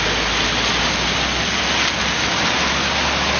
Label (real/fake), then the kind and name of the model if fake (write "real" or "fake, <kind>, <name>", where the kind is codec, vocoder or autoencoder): real